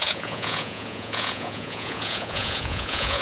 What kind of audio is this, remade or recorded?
remade